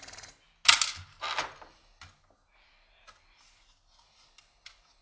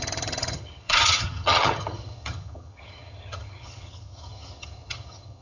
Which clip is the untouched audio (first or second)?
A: first